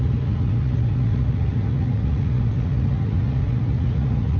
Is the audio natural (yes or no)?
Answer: no